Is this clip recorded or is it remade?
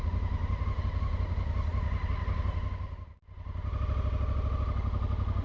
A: recorded